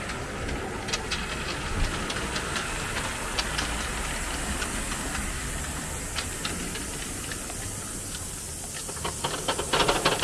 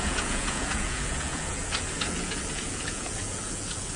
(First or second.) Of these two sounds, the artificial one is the second